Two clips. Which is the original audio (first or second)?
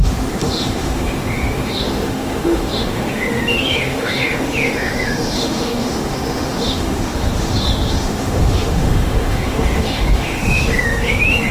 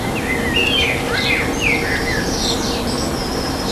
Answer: second